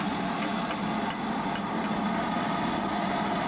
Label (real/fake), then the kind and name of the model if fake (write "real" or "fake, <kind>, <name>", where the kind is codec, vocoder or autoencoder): real